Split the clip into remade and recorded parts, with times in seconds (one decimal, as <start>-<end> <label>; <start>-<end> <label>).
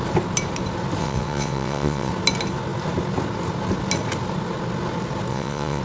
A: 0.0-1.0 recorded; 1.0-2.1 remade; 2.1-5.3 recorded; 5.3-5.8 remade